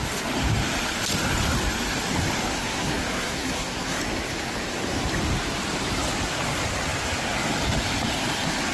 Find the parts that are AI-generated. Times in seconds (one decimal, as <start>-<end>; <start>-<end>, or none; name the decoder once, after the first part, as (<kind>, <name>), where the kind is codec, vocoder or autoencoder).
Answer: 2.5-4.0 (codec, SNAC)